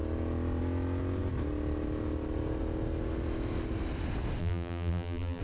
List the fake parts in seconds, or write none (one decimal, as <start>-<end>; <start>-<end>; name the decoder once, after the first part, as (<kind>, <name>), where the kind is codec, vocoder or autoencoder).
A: 4.4-5.4 (vocoder, BigVGAN v2)